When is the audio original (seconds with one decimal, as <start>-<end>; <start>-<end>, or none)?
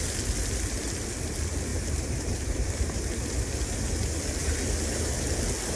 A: 0.0-1.7; 3.2-5.8